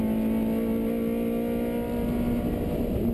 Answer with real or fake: real